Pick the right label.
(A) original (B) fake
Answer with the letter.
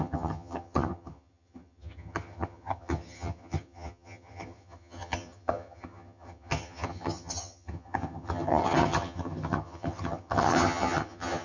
B